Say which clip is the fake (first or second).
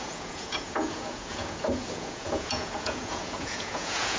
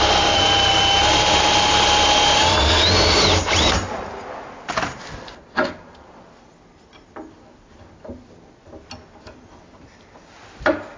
first